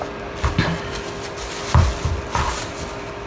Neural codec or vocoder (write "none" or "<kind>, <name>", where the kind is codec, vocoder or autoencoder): none